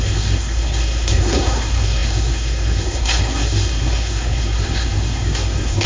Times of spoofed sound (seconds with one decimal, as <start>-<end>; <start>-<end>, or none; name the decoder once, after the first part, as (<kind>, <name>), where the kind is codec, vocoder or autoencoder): 0.0-5.9 (codec, SNAC)